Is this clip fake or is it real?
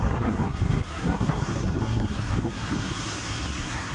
fake